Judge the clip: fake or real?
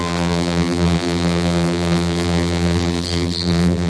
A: fake